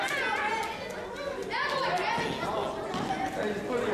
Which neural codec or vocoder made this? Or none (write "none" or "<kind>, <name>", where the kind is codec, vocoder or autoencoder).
none